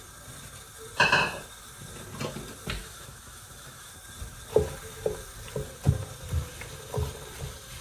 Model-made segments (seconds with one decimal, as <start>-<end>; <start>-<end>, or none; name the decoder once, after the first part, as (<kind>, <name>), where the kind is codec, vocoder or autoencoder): 2.8-3.9 (autoencoder, DAC-VAE)